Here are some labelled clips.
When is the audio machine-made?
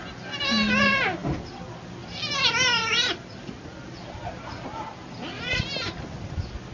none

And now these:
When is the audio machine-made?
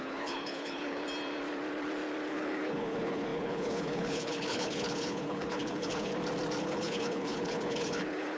0.0-1.0 (codec, HILCodec); 2.3-6.1; 6.6-8.4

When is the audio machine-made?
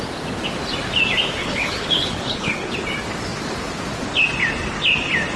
1.4-2.7 (codec, HILCodec)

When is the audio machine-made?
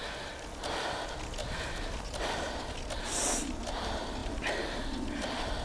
none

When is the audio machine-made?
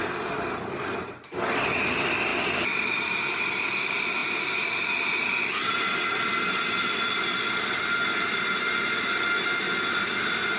none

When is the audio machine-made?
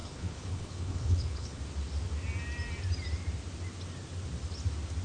0.0-1.6 (codec, HILCodec)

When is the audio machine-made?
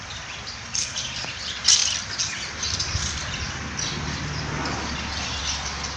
none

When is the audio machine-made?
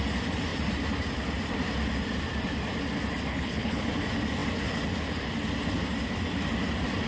3.3-3.9 (codec, HILCodec)